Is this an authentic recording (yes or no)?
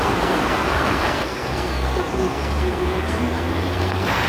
no